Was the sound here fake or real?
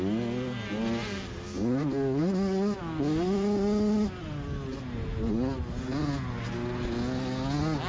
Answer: real